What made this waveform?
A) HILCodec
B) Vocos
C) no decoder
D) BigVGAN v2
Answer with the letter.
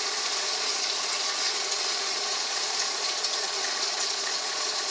B